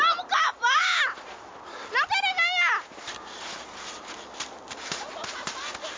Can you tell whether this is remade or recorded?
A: recorded